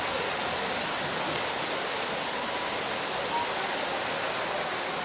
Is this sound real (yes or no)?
yes